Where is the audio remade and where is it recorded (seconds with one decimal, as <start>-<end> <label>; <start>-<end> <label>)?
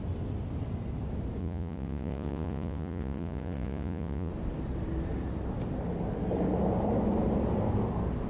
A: 0.0-1.4 recorded; 1.4-4.3 remade; 4.3-8.3 recorded